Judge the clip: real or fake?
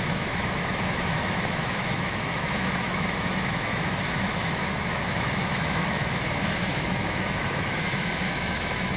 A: fake